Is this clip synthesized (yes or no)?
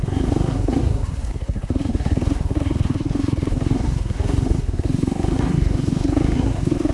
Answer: yes